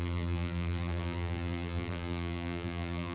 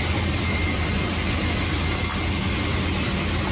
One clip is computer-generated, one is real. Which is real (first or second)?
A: second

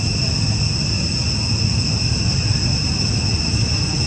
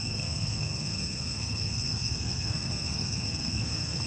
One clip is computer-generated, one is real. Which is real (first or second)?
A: first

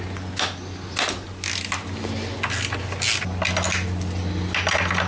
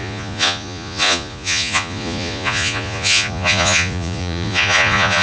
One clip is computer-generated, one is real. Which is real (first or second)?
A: first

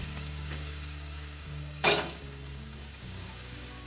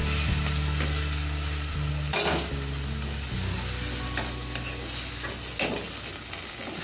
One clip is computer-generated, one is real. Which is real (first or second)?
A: second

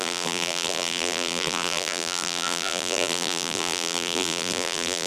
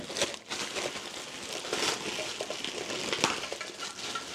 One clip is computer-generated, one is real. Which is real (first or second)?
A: second